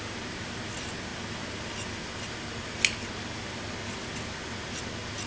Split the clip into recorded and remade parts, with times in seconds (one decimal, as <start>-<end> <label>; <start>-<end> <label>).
0.0-5.3 recorded